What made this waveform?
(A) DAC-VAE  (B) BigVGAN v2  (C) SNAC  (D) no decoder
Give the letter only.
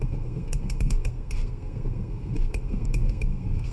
C